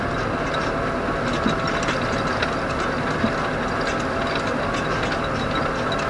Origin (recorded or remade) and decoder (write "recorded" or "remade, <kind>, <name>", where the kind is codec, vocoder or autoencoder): recorded